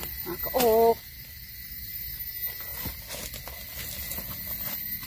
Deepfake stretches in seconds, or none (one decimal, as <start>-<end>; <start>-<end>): none